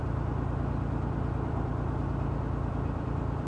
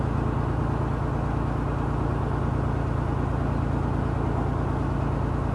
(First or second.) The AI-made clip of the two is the first